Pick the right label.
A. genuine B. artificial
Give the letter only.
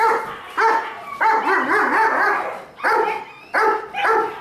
A